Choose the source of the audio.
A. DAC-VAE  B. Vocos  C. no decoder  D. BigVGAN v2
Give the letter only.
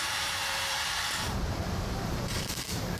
D